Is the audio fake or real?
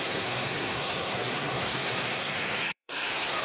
fake